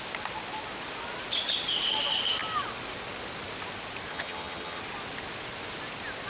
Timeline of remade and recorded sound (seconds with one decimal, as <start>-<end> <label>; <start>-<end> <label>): 0.0-4.1 recorded; 4.1-4.8 remade; 4.8-6.3 recorded